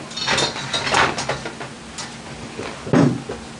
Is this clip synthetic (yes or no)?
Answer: no